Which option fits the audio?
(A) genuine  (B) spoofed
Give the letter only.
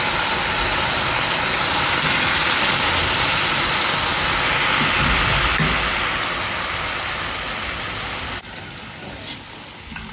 A